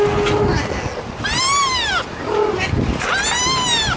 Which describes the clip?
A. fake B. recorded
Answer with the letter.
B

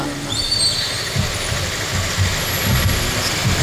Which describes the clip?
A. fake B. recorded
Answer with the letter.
B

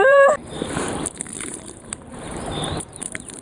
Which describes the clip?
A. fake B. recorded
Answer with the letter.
A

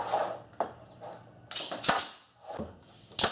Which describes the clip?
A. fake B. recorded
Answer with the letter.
B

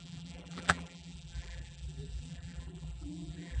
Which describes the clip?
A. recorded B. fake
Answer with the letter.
B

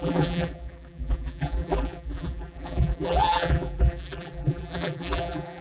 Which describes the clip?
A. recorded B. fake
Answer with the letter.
B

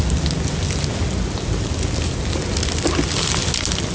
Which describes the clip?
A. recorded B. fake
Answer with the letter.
A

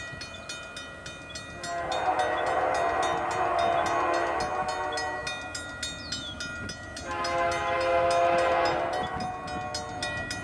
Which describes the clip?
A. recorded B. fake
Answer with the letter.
A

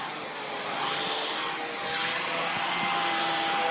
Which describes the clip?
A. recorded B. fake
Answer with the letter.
A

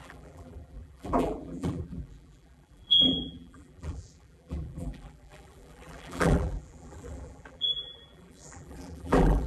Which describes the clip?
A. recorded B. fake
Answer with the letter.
B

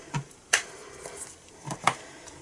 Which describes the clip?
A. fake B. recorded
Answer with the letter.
A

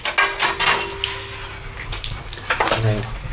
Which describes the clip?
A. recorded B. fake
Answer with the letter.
A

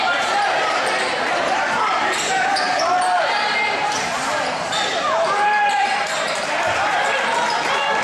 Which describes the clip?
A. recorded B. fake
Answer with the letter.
B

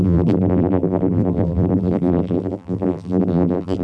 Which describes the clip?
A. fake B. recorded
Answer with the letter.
A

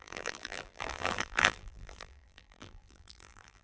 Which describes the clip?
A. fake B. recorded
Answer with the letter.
A